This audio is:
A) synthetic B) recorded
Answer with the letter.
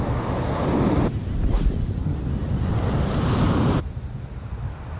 B